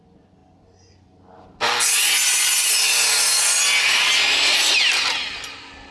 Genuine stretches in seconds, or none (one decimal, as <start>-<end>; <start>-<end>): 0.0-5.9